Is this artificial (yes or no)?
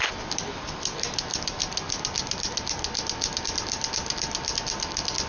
yes